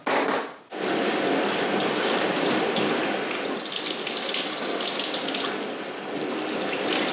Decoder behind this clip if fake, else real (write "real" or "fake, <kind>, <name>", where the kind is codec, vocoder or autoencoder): real